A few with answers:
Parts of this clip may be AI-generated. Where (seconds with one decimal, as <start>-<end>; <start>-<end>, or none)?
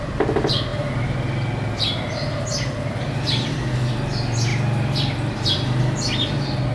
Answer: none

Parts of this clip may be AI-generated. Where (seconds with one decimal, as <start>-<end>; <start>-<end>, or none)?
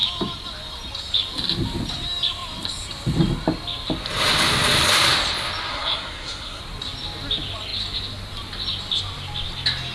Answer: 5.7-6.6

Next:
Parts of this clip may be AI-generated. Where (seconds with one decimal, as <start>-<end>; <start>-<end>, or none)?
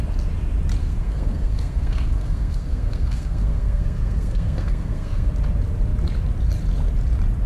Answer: 0.8-5.3